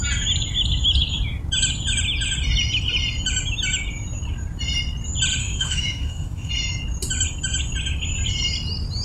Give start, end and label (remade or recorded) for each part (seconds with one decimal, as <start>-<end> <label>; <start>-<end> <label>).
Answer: 0.0-5.4 recorded; 5.4-6.5 remade; 6.5-9.0 recorded